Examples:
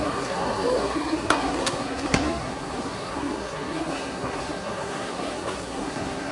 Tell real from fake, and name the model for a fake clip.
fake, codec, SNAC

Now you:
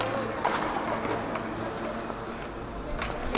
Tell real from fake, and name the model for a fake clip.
real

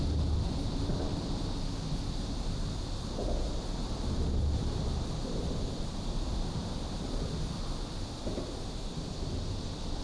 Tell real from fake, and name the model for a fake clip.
real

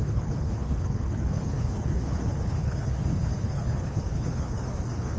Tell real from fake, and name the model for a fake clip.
fake, codec, HILCodec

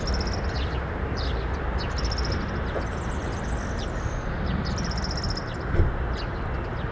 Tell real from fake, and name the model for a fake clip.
real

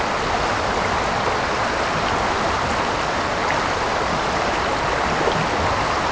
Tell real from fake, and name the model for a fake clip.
real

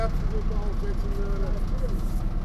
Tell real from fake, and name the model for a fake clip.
real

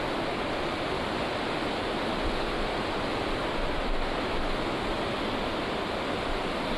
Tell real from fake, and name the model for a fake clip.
real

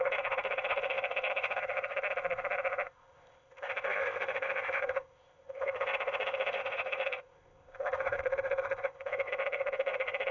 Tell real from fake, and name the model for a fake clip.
fake, codec, ZipCodec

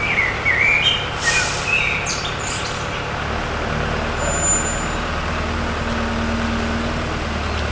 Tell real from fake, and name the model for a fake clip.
real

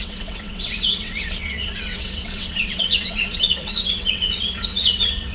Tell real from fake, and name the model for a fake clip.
fake, vocoder, WaveNeXt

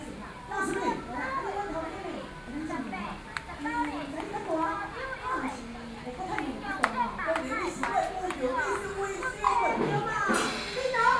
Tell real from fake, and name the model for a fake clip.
real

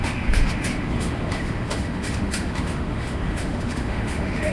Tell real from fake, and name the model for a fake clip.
fake, autoencoder, DAC-VAE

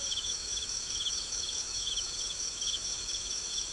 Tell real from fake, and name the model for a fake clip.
fake, autoencoder, DAC-VAE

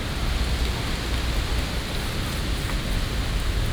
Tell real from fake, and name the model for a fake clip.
real